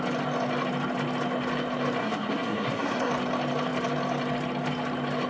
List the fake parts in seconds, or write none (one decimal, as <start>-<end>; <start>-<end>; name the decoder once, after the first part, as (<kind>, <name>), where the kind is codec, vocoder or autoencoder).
2.0-3.1 (codec, SNAC)